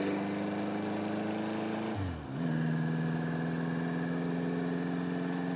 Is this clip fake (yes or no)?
no